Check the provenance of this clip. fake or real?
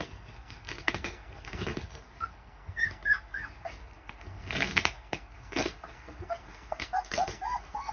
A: fake